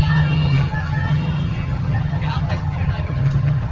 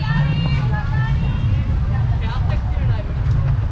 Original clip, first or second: second